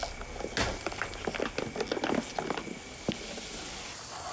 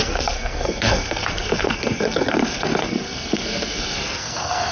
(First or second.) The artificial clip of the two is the second